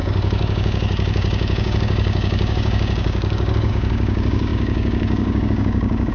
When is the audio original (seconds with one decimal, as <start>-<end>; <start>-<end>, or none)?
none